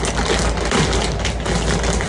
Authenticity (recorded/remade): recorded